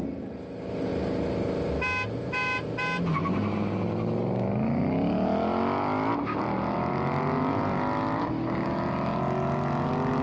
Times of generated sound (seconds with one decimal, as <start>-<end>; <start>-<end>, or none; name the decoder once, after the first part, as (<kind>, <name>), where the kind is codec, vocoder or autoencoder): none